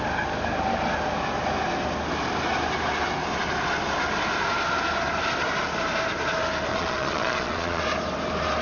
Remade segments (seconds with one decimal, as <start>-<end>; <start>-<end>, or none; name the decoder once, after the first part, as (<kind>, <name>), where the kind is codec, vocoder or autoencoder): 6.7-7.8 (vocoder, Vocos)